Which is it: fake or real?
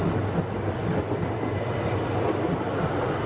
real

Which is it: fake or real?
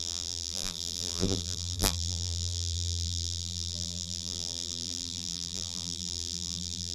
fake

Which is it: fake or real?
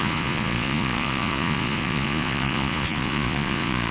fake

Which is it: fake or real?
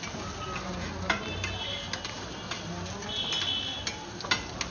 real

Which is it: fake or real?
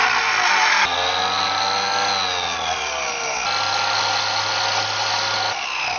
real